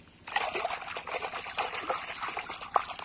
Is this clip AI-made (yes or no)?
no